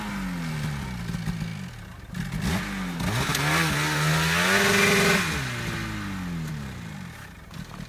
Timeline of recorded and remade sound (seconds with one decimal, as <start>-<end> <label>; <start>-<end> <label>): 0.0-7.9 recorded